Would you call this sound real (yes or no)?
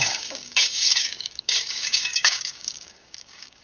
no